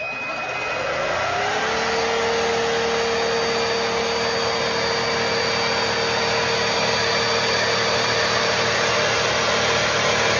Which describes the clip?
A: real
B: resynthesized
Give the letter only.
A